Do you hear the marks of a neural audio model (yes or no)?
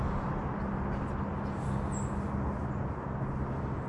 no